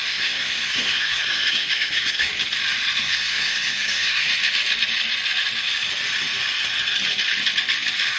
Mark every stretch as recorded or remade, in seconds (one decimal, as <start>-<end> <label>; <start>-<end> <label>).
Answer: 0.0-2.3 remade; 2.3-3.0 recorded; 3.0-4.3 remade; 4.3-8.2 recorded